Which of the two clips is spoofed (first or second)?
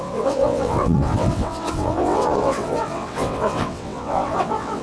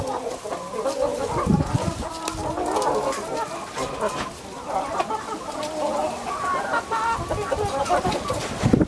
first